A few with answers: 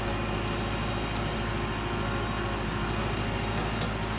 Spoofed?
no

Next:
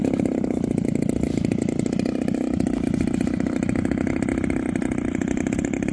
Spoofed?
no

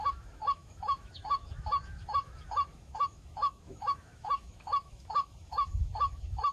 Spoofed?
yes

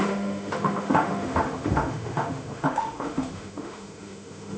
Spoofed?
yes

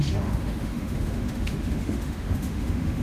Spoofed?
yes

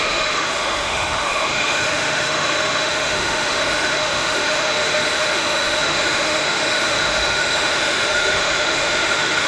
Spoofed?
yes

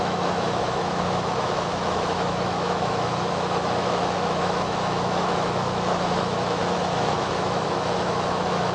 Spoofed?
yes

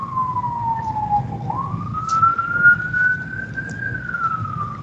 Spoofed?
no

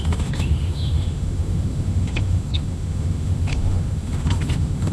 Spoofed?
yes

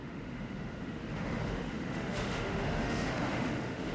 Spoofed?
yes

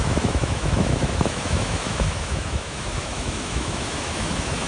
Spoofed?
yes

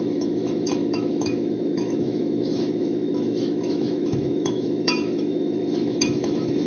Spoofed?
yes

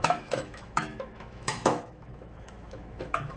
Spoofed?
yes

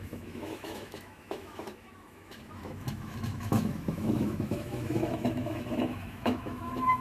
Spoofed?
yes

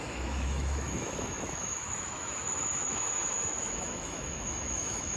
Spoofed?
yes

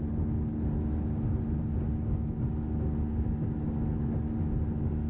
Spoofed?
no